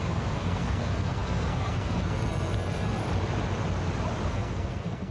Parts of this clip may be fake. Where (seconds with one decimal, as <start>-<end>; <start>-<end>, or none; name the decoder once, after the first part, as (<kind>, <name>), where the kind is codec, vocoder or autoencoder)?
0.0-3.0 (codec, SNAC); 4.3-5.1